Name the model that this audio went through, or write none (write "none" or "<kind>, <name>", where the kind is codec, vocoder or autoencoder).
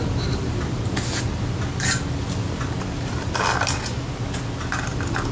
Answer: none